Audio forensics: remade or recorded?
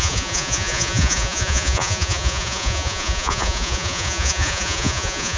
remade